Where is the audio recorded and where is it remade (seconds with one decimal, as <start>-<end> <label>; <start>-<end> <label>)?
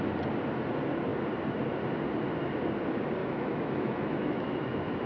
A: 0.0-3.2 recorded; 3.2-5.1 remade